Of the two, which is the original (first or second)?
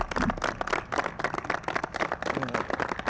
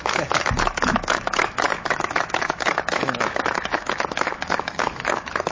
first